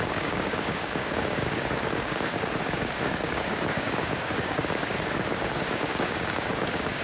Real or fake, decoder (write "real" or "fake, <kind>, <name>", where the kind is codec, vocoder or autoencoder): fake, codec, DAC